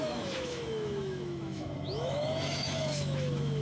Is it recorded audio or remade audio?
remade